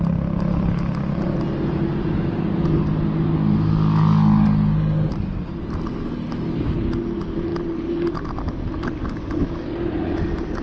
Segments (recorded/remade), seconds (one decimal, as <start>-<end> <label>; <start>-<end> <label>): 0.0-10.6 recorded